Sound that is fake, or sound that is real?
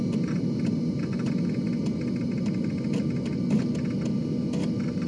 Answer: real